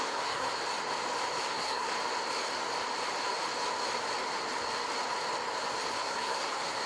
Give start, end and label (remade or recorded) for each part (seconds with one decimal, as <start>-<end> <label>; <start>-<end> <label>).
0.0-0.6 remade; 0.6-1.4 recorded; 1.4-1.9 remade; 1.9-6.0 recorded; 6.0-6.9 remade